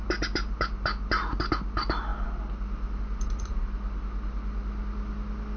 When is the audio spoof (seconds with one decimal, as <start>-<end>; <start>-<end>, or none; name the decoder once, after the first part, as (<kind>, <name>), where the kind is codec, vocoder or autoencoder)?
none